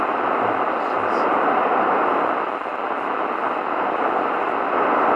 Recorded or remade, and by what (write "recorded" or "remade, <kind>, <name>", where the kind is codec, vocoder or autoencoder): recorded